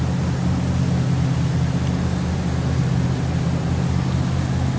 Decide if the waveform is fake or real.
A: real